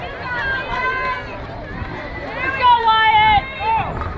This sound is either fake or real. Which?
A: real